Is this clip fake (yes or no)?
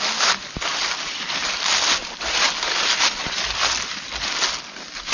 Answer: no